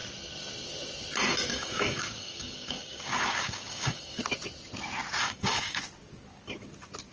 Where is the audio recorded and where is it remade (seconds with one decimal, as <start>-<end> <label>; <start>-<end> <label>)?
0.0-1.5 recorded; 1.5-4.2 remade; 4.2-5.2 recorded; 5.2-5.8 remade; 5.8-7.1 recorded